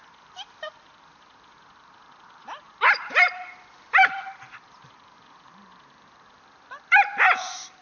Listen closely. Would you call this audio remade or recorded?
remade